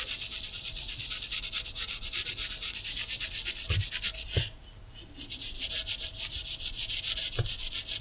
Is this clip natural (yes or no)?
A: yes